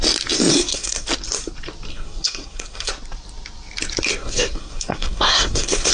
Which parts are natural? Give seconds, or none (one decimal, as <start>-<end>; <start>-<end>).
0.0-0.5; 1.1-1.9; 2.9-4.1

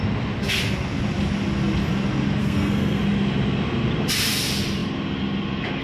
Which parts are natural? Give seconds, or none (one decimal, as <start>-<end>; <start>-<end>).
0.0-2.4; 3.0-5.8